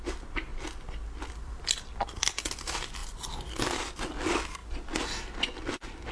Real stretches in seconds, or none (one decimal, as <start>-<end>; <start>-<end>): 0.5-1.2; 4.6-5.6